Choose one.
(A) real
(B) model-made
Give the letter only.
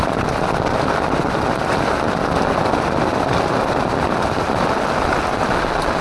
A